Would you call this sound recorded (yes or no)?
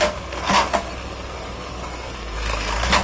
no